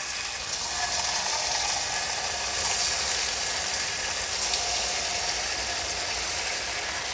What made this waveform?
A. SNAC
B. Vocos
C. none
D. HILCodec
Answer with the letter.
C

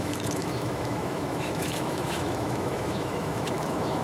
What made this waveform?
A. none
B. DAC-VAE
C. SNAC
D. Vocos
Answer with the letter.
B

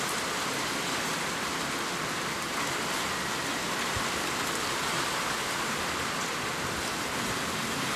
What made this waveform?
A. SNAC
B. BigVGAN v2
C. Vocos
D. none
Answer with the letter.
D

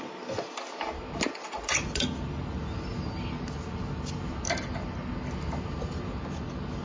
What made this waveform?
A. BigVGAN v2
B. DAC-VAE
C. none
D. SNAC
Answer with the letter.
C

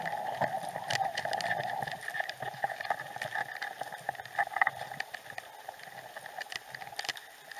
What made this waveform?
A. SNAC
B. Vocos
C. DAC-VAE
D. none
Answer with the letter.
D